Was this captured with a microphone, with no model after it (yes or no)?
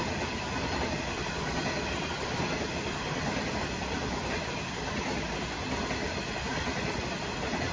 yes